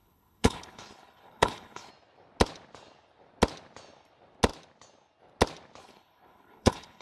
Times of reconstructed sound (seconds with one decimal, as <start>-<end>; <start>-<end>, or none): 0.0-1.9; 5.8-7.0